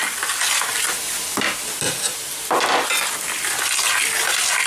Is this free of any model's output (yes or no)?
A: yes